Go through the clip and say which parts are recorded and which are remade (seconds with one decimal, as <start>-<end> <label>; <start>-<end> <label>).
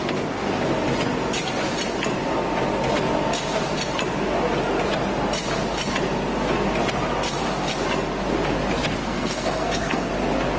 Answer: 0.0-9.0 recorded; 9.0-10.1 remade; 10.1-10.6 recorded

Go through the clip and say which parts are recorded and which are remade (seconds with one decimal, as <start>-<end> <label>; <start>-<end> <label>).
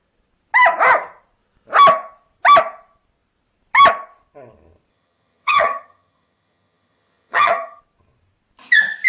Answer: 0.0-4.9 recorded; 4.9-7.8 remade; 7.8-9.1 recorded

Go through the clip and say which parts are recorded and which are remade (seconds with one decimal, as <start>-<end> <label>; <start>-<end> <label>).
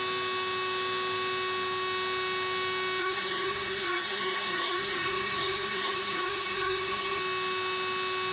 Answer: 0.0-3.0 recorded; 3.0-7.2 remade; 7.2-8.3 recorded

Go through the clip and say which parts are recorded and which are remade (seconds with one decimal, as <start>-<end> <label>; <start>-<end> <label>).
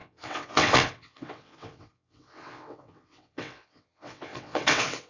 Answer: 0.0-5.1 remade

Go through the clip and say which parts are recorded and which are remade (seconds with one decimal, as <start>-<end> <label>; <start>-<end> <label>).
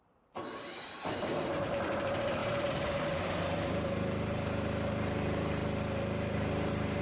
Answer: 0.0-5.6 remade; 5.6-6.3 recorded; 6.3-7.0 remade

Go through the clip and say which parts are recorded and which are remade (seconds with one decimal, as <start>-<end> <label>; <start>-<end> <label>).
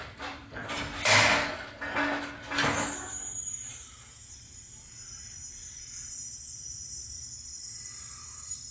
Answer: 0.0-1.1 remade; 1.1-3.1 recorded; 3.1-8.7 remade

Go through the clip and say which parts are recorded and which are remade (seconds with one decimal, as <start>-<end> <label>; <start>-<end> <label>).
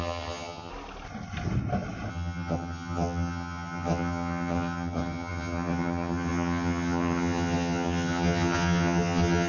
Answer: 0.0-0.7 remade; 0.7-2.1 recorded; 2.1-9.5 remade